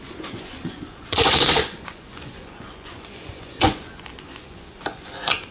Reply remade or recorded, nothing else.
remade